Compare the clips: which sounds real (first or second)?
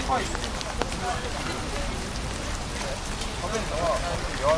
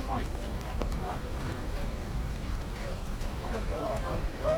first